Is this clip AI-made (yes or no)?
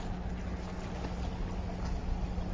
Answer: no